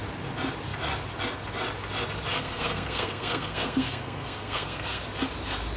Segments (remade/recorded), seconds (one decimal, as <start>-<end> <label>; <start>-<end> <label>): 0.0-2.3 recorded; 2.3-5.0 remade; 5.0-5.8 recorded